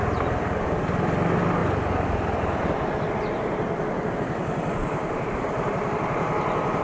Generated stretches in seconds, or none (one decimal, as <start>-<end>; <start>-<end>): 4.8-5.9